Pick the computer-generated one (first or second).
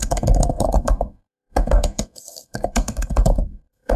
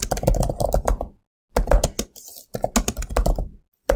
first